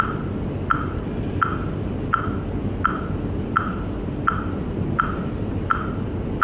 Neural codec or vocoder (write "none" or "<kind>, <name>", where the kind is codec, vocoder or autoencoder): none